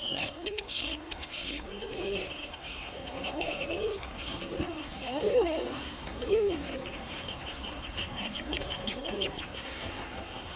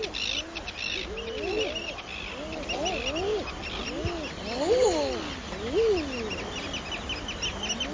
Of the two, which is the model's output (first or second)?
first